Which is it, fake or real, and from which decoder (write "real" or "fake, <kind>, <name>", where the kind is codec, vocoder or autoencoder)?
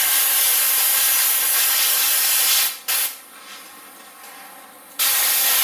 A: real